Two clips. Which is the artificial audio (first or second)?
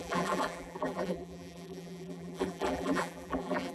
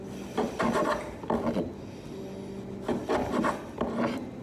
first